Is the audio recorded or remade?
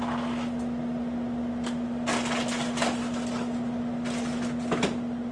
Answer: recorded